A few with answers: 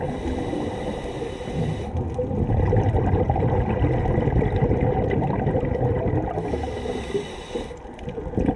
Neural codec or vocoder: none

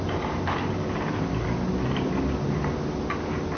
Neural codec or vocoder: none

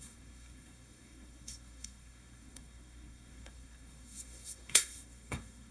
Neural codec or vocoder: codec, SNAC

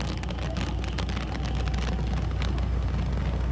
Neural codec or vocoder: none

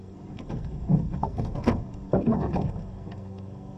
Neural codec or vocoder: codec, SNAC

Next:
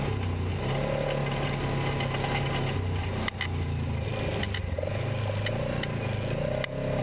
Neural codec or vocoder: none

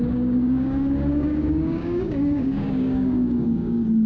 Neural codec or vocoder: codec, DAC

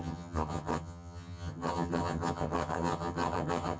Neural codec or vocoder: vocoder, HiFi-GAN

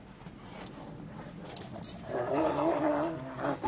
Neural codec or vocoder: none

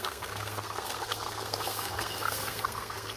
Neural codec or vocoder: codec, SNAC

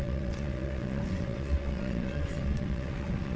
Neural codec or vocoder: vocoder, WaveNeXt